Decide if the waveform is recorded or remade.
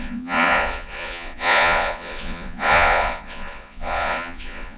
remade